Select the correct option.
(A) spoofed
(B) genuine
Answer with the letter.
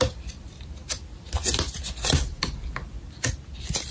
B